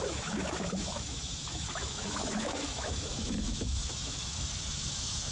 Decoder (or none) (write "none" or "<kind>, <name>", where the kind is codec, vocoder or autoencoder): autoencoder, DAC-VAE